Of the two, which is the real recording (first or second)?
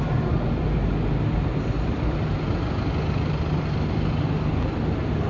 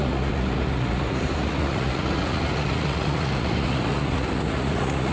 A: first